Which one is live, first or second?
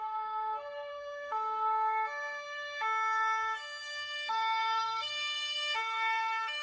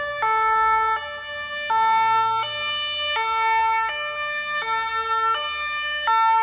second